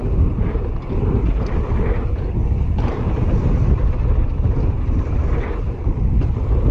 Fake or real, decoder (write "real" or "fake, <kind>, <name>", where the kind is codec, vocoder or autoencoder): real